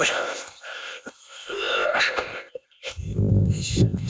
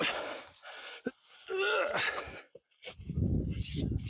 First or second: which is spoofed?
first